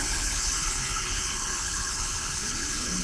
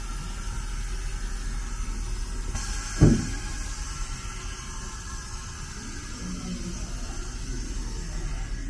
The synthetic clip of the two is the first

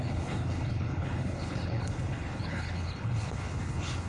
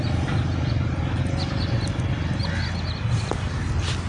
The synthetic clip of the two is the first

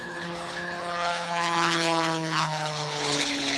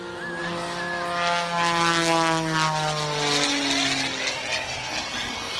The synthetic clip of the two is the first